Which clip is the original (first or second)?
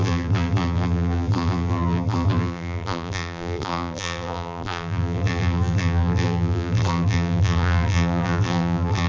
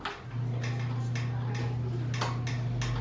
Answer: second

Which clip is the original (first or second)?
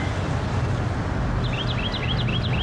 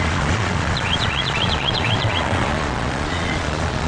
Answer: first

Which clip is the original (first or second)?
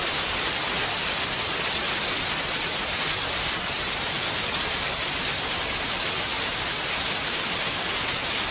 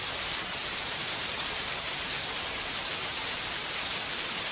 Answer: first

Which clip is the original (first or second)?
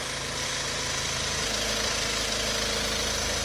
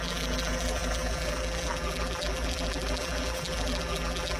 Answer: first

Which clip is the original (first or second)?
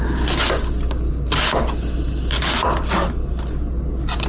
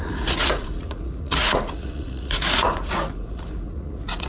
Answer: first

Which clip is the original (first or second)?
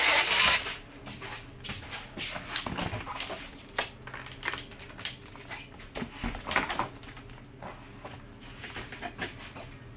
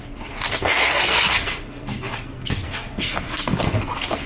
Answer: first